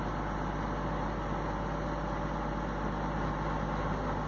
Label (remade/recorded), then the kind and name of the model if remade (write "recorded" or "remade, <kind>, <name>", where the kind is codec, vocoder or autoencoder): recorded